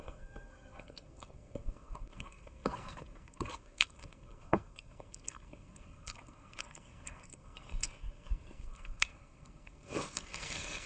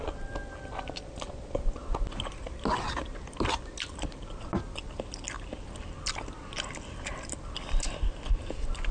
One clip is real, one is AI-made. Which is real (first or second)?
second